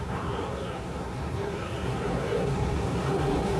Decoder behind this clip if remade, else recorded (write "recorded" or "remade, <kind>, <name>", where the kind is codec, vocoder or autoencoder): remade, codec, SNAC